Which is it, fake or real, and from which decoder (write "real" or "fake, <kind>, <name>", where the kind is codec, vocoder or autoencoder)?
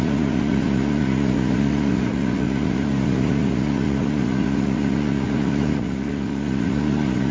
fake, vocoder, Vocos